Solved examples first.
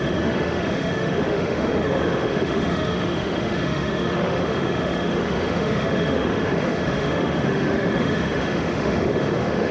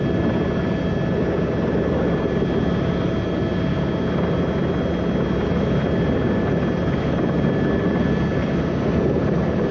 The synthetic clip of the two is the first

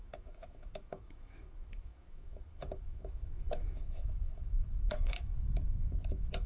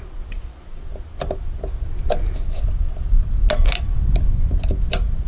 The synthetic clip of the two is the first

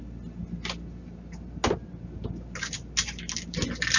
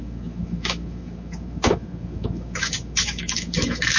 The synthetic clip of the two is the second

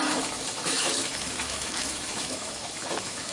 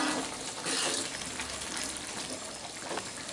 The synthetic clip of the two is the first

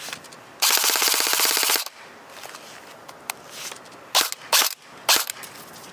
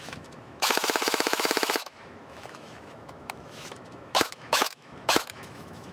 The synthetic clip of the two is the second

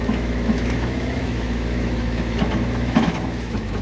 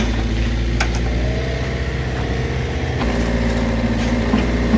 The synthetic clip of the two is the first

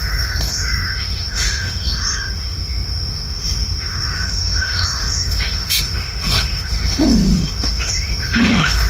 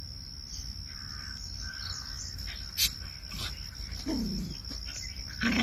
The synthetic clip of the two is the first